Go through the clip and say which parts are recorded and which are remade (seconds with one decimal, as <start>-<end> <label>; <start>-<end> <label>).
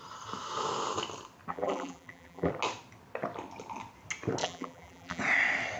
0.0-1.5 recorded; 1.5-2.5 remade; 2.5-4.4 recorded; 4.4-5.2 remade; 5.2-5.8 recorded